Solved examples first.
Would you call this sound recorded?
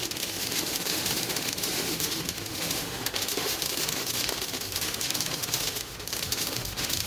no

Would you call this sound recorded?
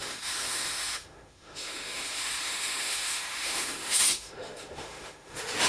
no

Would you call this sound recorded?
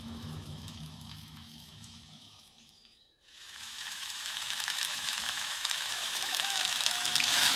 no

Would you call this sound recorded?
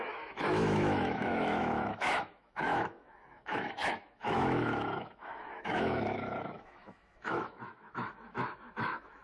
no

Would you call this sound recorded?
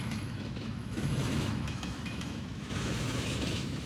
no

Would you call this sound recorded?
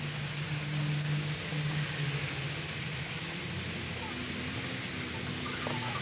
yes